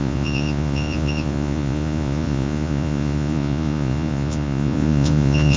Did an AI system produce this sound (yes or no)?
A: yes